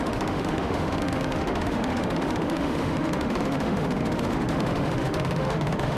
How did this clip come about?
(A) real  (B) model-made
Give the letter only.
B